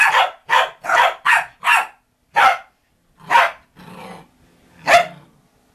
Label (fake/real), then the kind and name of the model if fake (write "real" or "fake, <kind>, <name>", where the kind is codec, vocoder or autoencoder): real